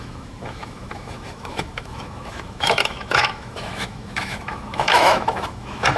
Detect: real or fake fake